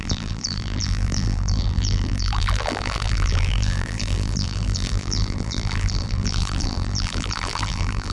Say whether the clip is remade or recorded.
remade